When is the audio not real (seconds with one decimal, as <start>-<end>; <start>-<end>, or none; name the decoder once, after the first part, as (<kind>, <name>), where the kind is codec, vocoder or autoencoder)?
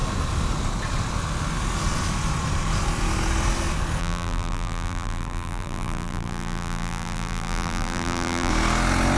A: 4.0-8.5 (vocoder, BigVGAN v2)